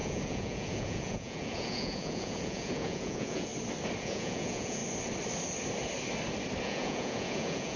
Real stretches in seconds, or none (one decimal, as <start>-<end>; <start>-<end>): 3.5-4.0; 4.8-6.6